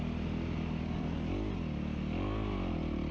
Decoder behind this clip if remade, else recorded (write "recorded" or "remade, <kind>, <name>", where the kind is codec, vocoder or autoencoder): recorded